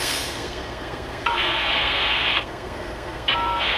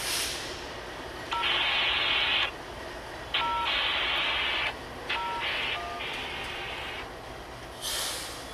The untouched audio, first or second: second